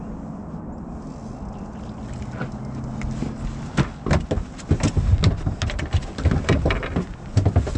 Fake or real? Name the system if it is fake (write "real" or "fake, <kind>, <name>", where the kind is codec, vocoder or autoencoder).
real